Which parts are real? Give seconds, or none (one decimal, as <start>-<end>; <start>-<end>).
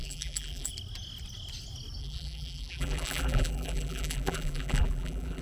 0.7-2.0